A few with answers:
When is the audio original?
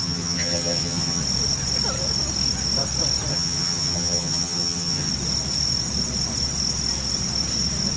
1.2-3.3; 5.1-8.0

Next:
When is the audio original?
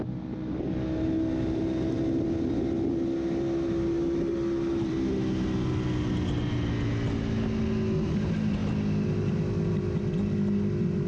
0.0-11.1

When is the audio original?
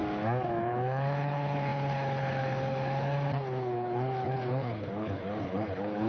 0.0-0.6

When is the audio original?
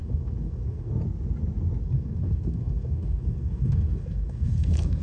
0.9-1.8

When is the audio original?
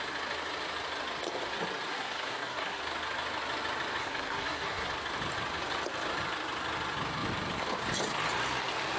0.0-1.9; 2.8-4.0; 4.9-9.0